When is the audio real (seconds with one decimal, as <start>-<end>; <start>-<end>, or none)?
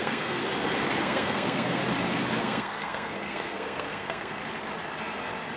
0.4-1.0; 1.8-2.4; 4.4-5.6